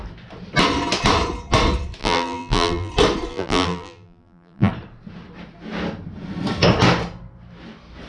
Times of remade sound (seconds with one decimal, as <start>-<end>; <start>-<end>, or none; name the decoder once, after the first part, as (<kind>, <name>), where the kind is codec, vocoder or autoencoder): 2.0-2.9 (vocoder, BigVGAN v2); 3.3-4.7